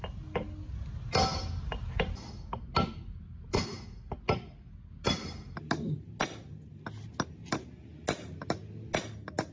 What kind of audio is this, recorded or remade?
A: recorded